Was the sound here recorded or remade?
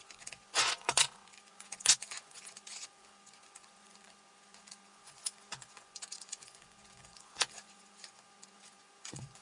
remade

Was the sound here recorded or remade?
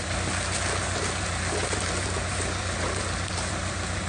recorded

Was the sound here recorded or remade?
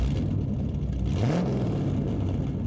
recorded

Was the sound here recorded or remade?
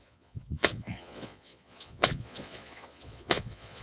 remade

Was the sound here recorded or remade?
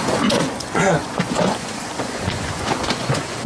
remade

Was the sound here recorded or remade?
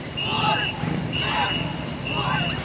recorded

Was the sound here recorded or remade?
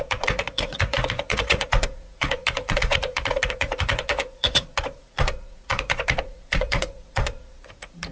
remade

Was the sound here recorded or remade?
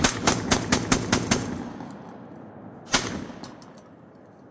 recorded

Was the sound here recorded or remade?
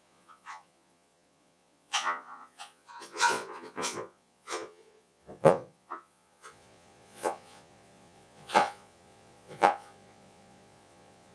remade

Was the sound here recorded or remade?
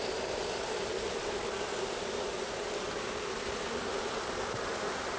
recorded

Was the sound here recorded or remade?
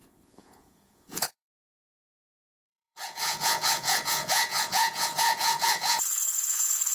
remade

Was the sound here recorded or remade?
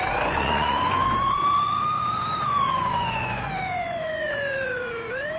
remade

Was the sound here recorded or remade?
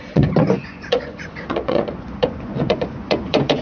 remade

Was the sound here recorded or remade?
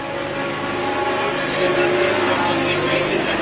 recorded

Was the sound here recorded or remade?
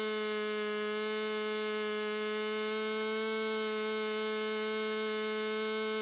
recorded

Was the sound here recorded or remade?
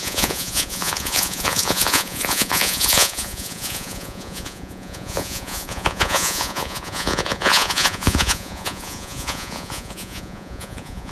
remade